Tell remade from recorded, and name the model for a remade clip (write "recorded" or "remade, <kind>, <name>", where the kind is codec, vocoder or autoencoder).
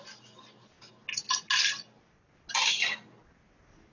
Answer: recorded